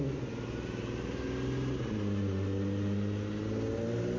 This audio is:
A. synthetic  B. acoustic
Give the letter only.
B